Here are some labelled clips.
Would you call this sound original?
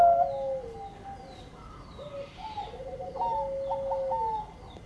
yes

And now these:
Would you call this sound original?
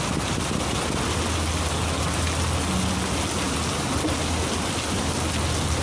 yes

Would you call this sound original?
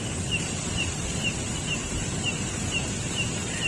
yes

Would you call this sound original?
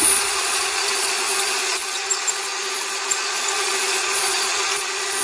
no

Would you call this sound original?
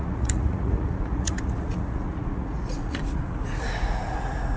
no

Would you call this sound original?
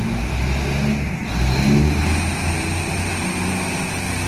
yes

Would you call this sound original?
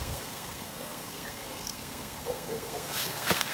no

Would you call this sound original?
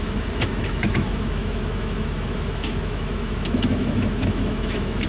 no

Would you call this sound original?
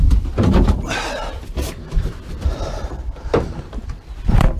no